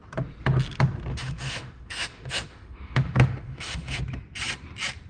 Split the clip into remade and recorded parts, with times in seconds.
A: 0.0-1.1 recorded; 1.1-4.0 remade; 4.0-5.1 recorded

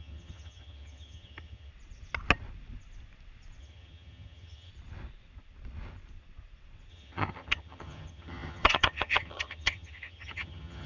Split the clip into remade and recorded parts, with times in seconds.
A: 0.0-1.7 remade; 1.7-3.6 recorded; 3.6-4.7 remade; 4.7-6.9 recorded; 6.9-10.9 remade

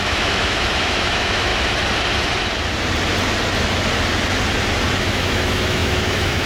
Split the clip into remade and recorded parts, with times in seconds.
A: 0.0-1.5 remade; 1.5-5.0 recorded; 5.0-6.5 remade

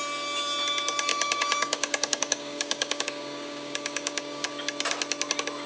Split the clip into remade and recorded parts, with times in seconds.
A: 0.0-1.1 recorded; 1.1-4.5 remade; 4.5-5.7 recorded

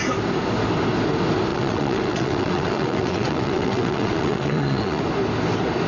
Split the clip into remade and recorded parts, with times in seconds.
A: 0.0-1.5 recorded; 1.5-5.0 remade; 5.0-5.9 recorded

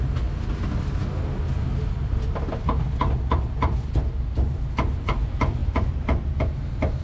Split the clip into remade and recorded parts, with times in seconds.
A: 0.0-5.6 recorded; 5.6-6.4 remade; 6.4-7.0 recorded

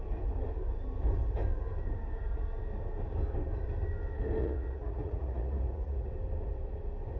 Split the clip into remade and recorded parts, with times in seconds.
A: 0.0-4.4 recorded; 4.4-6.1 remade; 6.1-7.2 recorded